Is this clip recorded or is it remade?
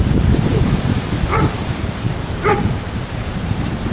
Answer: remade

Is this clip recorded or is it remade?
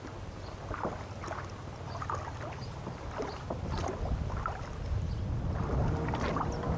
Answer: recorded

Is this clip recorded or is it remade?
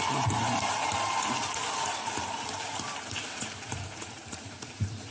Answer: remade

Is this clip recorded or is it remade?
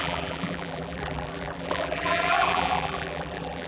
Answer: remade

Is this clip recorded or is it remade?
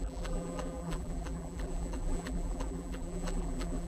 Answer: remade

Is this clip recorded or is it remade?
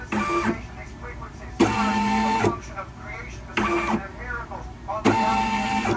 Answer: remade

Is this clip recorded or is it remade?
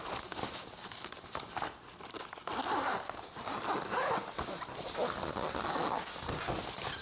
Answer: recorded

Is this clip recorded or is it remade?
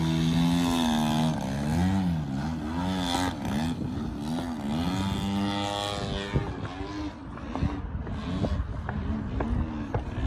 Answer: recorded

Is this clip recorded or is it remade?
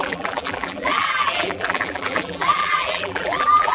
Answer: remade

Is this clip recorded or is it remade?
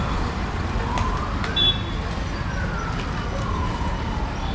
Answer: recorded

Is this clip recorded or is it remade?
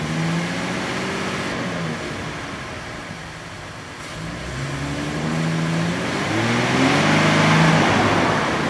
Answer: recorded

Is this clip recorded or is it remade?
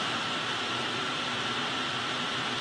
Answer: remade